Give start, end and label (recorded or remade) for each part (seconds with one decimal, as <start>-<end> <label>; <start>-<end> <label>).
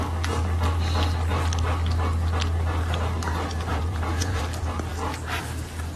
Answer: 0.0-3.7 recorded; 3.7-4.4 remade; 4.4-6.0 recorded